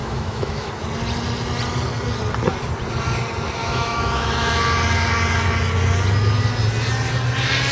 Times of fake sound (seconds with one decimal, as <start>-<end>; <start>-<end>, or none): 0.0-0.7; 3.6-4.6